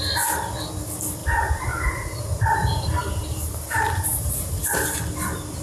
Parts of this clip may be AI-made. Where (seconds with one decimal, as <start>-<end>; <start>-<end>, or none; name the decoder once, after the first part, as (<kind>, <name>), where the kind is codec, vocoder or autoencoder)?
1.2-4.6 (vocoder, BigVGAN v2)